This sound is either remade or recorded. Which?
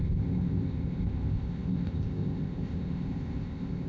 remade